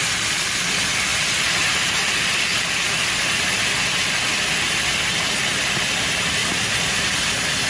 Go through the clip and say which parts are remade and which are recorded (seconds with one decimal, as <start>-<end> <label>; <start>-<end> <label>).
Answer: 0.0-1.1 recorded; 1.1-2.1 remade; 2.1-6.4 recorded; 6.4-7.2 remade; 7.2-7.7 recorded